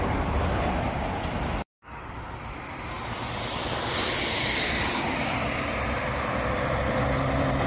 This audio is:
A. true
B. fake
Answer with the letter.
B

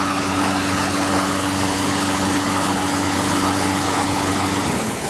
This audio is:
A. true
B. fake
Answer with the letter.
B